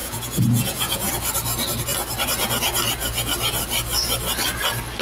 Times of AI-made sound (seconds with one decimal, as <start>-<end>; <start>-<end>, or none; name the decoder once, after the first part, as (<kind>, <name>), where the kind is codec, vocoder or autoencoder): 0.0-1.1 (vocoder, Vocos)